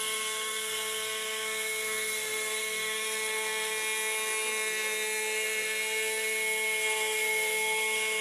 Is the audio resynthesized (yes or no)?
yes